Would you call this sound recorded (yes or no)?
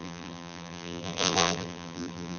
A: no